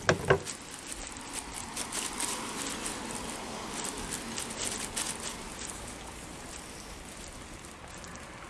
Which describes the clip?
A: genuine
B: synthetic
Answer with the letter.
A